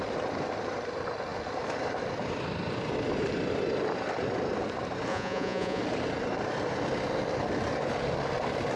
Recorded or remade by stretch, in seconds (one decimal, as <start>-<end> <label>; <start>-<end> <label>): 0.0-5.1 recorded; 5.1-5.8 remade; 5.8-8.8 recorded